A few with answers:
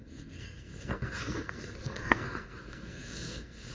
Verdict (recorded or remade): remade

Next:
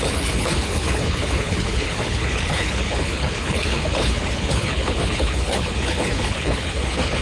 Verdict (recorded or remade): remade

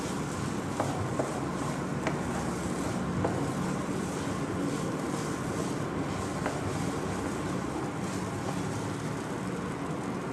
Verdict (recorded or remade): recorded